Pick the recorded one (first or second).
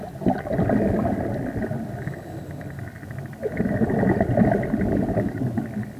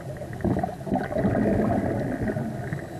second